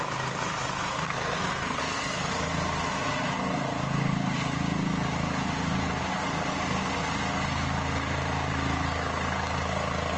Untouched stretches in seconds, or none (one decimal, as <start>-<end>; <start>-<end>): 0.0-0.9; 2.3-10.2